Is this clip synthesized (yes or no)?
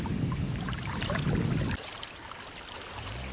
no